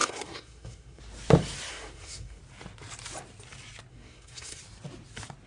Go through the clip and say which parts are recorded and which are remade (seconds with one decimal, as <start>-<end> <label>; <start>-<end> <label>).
0.0-1.0 remade; 1.0-1.7 recorded; 1.7-2.4 remade; 2.4-3.9 recorded; 3.9-4.6 remade; 4.6-5.5 recorded